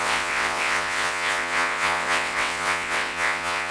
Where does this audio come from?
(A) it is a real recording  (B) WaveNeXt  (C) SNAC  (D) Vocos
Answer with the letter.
B